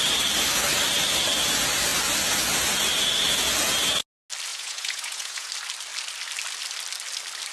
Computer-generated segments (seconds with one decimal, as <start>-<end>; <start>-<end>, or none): 4.5-5.5